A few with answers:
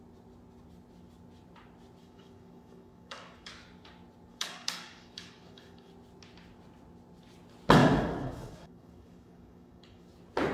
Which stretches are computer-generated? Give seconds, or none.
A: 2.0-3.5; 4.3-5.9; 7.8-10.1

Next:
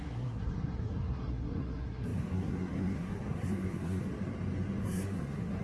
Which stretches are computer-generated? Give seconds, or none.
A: 0.0-4.0; 4.8-5.6

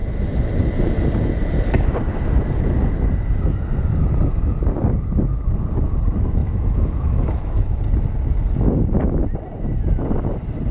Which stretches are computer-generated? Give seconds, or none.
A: 6.4-7.8